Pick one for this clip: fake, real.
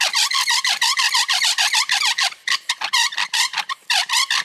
real